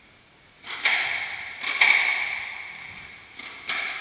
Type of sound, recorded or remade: recorded